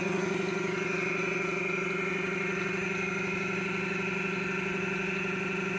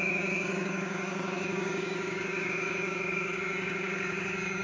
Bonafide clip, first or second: first